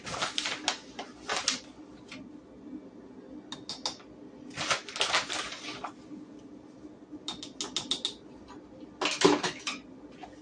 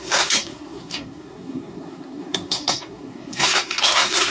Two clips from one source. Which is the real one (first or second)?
first